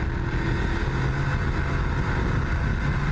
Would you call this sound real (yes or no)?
yes